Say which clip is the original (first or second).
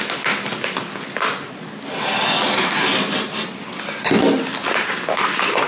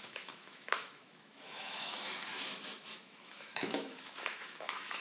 first